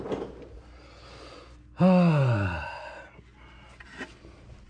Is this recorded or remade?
recorded